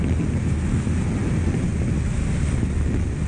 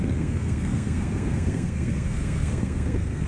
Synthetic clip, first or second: second